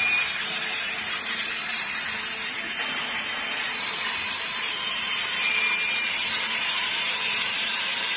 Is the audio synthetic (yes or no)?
yes